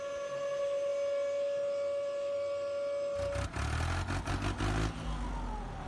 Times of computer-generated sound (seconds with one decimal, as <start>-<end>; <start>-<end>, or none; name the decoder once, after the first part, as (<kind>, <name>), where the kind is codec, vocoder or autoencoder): none